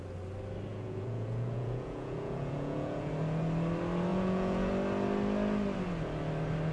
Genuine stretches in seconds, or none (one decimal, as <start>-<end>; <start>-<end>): 0.0-0.7; 3.1-4.1; 4.7-6.7